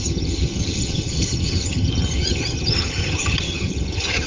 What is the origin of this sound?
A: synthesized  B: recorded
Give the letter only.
A